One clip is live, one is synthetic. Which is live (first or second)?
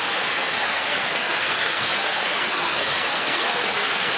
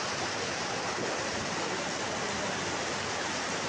second